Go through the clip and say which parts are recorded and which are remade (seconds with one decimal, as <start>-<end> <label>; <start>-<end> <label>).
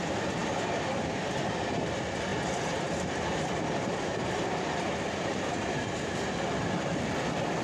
0.0-0.4 recorded; 0.4-1.2 remade; 1.2-2.3 recorded; 2.3-6.1 remade; 6.1-7.6 recorded